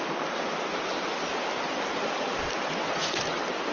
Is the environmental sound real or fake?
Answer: real